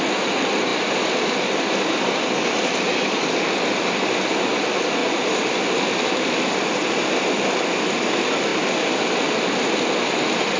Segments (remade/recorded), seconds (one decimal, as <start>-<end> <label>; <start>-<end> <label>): 0.0-10.6 recorded